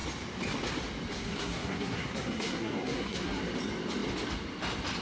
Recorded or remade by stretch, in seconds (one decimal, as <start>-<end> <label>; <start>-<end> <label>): 0.0-1.1 recorded; 1.1-3.4 remade; 3.4-5.0 recorded